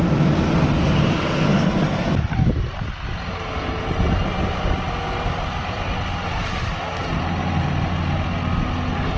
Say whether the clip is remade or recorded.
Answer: recorded